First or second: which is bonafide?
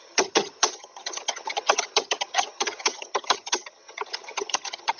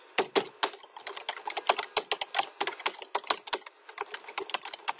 second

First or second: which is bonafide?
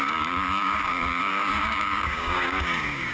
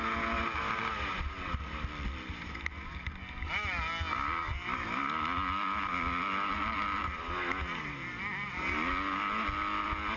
second